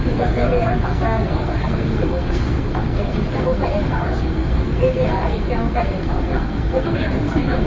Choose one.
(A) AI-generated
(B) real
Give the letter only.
A